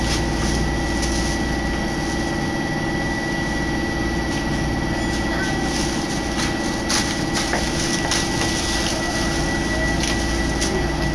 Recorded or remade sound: recorded